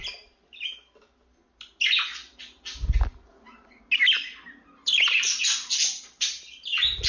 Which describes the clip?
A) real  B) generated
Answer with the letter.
A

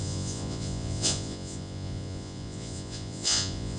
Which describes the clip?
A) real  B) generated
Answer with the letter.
B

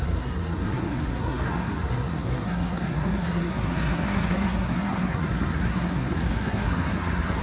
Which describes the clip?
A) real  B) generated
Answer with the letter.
B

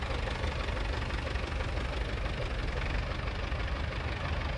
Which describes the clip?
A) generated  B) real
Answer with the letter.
B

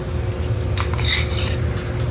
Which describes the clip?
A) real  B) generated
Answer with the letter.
A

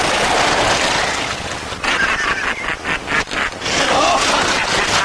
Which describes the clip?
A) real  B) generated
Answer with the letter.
A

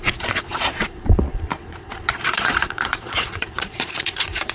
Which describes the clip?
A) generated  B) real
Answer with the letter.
A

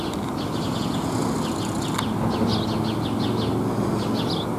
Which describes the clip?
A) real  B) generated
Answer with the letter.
A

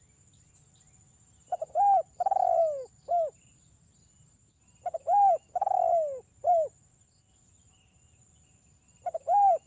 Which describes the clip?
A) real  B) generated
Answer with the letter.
A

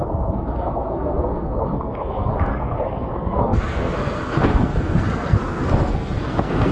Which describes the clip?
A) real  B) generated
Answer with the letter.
B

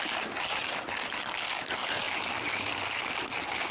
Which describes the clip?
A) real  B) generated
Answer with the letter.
A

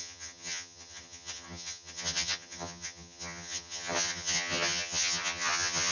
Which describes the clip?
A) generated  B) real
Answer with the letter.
A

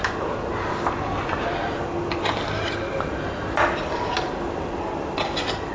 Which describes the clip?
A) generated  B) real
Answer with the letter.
B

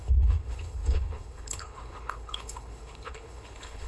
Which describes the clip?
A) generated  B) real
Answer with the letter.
A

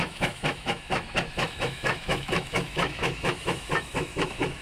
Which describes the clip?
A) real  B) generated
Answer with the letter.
B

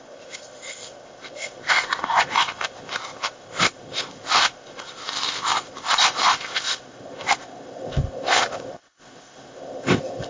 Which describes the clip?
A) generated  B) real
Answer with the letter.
A